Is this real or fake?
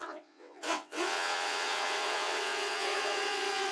fake